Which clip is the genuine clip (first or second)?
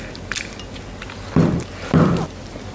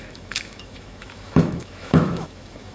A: first